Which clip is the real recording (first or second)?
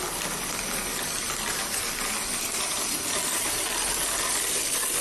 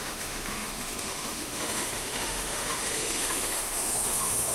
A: first